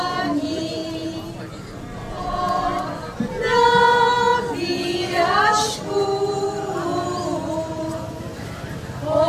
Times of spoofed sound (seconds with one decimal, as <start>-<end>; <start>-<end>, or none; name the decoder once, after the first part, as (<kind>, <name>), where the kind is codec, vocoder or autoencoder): none